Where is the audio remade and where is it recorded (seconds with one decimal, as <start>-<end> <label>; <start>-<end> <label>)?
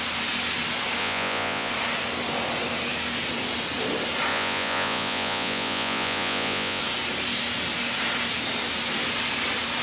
0.0-1.0 recorded; 1.0-1.7 remade; 1.7-4.3 recorded; 4.3-6.8 remade; 6.8-9.8 recorded